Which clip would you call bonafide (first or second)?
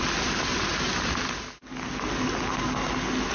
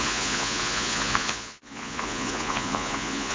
first